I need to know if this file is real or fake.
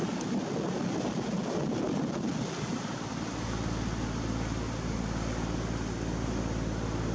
real